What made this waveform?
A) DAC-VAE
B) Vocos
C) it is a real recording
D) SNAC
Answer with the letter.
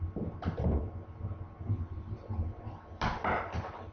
C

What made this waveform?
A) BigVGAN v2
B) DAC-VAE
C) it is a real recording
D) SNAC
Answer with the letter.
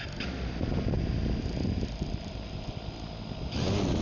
C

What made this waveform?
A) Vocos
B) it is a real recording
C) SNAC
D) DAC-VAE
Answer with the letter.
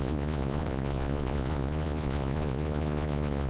A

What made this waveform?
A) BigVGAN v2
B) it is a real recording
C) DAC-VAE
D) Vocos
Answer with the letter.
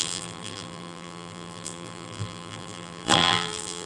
A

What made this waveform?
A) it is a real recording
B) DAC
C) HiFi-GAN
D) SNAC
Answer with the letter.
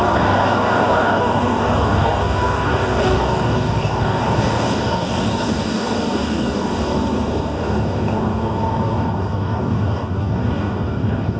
B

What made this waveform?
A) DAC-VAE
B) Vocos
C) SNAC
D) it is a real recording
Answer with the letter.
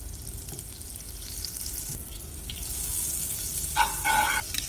D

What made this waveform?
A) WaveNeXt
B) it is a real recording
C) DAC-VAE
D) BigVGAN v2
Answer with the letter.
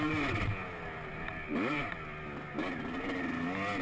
B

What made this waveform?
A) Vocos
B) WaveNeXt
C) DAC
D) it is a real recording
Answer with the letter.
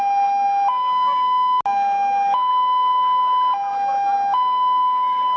D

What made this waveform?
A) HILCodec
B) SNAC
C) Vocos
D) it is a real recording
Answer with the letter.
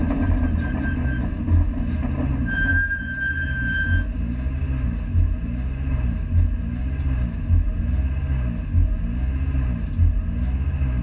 D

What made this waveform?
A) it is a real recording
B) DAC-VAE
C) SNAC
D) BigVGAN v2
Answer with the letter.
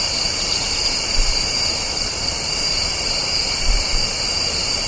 D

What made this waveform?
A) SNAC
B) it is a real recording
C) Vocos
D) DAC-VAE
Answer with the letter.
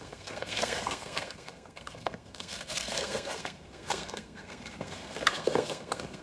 A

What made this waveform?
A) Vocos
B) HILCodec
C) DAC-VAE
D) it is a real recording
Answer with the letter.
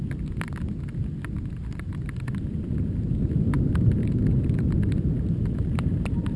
D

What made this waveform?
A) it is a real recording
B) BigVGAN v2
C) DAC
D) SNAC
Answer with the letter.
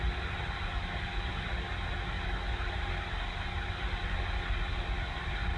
A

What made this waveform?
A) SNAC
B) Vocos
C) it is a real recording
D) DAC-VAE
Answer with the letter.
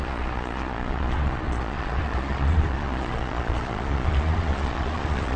B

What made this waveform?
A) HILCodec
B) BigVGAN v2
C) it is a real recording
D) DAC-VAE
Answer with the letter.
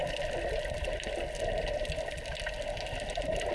C